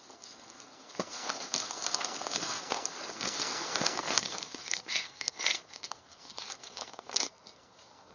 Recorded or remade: remade